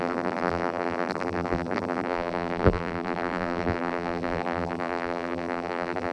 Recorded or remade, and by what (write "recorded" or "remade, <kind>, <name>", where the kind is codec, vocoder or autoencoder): remade, vocoder, BigVGAN v2